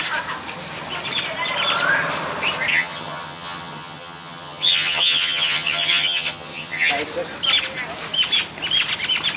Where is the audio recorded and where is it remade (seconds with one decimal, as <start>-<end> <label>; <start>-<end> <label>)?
0.0-2.7 recorded; 2.7-6.9 remade; 6.9-9.4 recorded

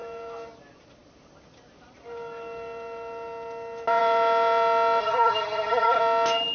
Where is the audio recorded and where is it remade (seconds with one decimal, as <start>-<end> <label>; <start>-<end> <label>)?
0.0-5.0 recorded; 5.0-6.0 remade; 6.0-6.5 recorded

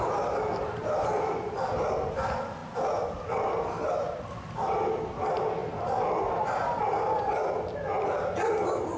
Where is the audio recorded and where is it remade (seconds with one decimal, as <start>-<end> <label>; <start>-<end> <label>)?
0.0-9.0 recorded

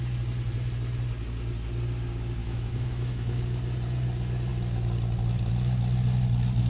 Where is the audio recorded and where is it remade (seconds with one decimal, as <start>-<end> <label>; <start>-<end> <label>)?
0.0-2.4 recorded; 2.4-3.4 remade; 3.4-6.7 recorded

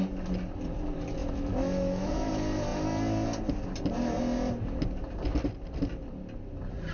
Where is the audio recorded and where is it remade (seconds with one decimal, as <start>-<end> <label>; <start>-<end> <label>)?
0.0-1.2 recorded; 1.2-2.3 remade; 2.3-6.9 recorded

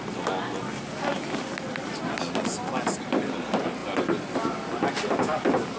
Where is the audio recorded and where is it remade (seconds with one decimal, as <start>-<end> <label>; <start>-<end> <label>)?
0.0-5.8 recorded

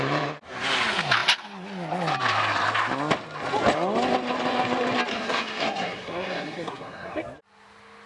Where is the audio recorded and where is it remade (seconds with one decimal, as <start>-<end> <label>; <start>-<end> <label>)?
0.0-5.1 recorded; 5.1-7.2 remade; 7.2-8.1 recorded

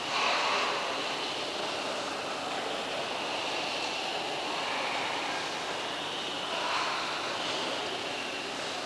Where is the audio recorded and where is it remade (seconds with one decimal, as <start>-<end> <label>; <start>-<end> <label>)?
0.0-8.9 recorded